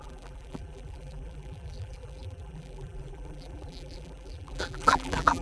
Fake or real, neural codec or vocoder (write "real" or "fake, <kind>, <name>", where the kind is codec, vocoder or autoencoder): fake, vocoder, BigVGAN v2